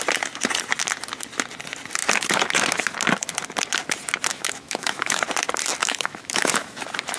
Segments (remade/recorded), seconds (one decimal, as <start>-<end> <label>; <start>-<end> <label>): 0.0-4.3 recorded; 4.3-5.2 remade; 5.2-5.8 recorded; 5.8-6.8 remade; 6.8-7.2 recorded

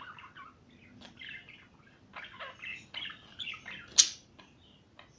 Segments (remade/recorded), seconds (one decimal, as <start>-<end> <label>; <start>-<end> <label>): 0.0-5.2 recorded